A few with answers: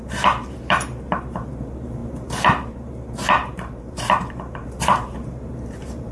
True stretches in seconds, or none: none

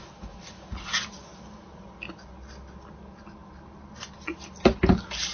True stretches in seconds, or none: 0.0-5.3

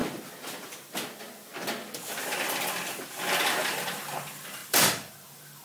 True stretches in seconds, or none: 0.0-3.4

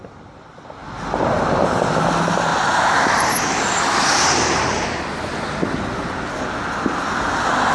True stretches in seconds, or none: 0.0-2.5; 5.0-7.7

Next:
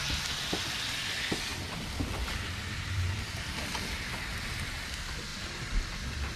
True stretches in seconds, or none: 0.0-1.5; 3.7-6.4

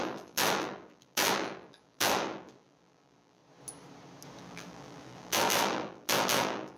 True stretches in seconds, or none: 3.4-4.4

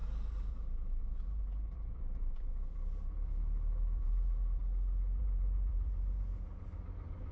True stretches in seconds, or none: 4.6-5.2

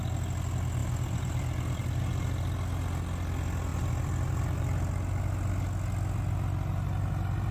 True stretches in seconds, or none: 0.0-0.8; 2.0-3.7; 5.2-7.5